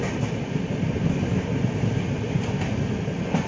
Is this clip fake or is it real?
real